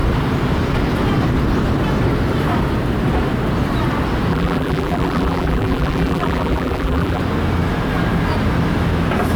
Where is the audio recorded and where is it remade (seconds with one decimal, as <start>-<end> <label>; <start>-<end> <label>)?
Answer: 0.0-4.3 recorded; 4.3-7.2 remade; 7.2-9.4 recorded